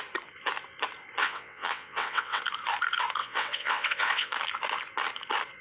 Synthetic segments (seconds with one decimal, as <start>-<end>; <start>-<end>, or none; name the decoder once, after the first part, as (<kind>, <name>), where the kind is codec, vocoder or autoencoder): 1.2-2.4 (vocoder, WaveNeXt); 3.2-4.3

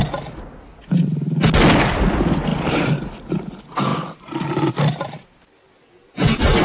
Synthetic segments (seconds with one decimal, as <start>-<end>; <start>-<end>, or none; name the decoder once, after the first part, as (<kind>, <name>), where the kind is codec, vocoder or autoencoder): 2.1-6.0 (vocoder, BigVGAN v2)

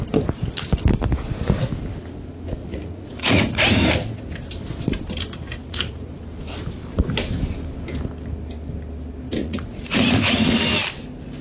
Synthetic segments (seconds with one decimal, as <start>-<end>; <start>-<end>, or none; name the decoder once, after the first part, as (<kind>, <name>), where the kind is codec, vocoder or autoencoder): 2.6-3.6 (vocoder, Vocos); 5.6-6.1; 9.4-10.6

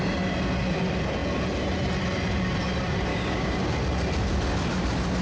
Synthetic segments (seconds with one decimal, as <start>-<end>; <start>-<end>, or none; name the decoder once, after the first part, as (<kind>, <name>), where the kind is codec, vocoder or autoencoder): 3.1-3.6 (codec, DAC)

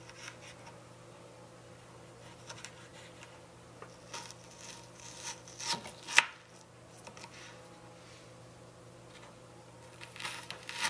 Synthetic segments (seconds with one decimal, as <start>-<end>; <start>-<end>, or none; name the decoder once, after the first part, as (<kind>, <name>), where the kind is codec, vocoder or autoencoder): none

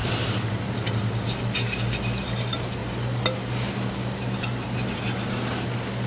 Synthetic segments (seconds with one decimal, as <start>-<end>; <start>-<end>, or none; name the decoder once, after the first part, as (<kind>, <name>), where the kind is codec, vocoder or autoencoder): none

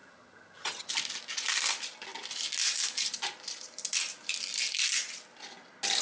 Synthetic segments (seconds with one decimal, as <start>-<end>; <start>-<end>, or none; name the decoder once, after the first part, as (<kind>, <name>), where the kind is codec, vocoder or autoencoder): 0.0-0.9 (vocoder, HiFi-GAN)

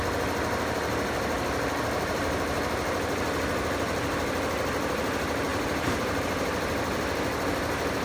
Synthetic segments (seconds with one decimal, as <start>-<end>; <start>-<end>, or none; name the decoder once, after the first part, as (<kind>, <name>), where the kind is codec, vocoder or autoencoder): 5.5-6.2 (vocoder, BigVGAN v2)